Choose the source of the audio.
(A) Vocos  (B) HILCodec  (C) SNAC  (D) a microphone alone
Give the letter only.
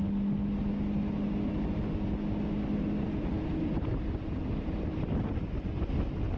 D